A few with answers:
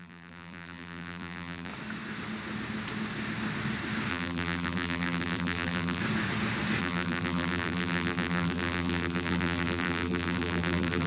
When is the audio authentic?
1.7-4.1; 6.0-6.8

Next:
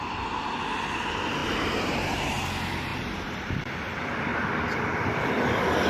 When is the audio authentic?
0.0-1.4; 2.3-2.9; 3.5-5.9

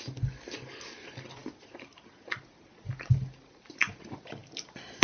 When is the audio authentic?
0.0-5.0